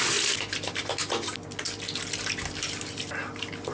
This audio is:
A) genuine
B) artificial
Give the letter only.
A